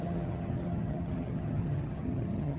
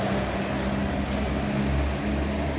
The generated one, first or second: first